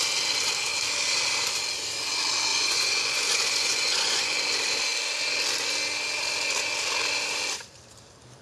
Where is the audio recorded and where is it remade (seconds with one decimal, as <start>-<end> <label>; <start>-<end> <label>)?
0.0-2.5 recorded; 2.5-4.4 remade; 4.4-8.4 recorded